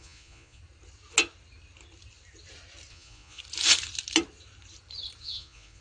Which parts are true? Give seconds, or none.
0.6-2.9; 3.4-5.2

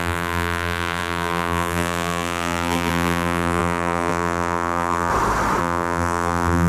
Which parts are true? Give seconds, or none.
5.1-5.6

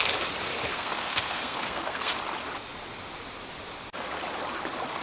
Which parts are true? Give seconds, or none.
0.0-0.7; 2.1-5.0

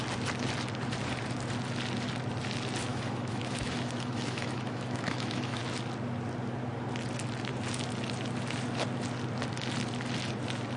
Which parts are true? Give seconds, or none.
0.0-2.9; 5.6-10.8